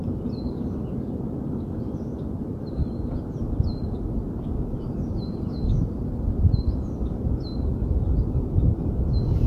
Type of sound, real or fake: real